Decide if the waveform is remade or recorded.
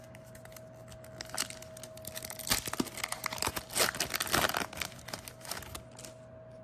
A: recorded